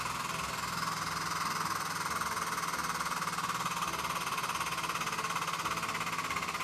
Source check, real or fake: real